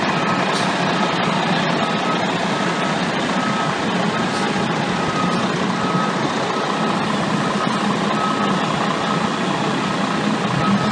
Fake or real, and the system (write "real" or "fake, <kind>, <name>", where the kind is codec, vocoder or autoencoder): real